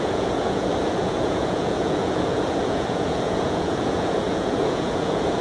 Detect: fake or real fake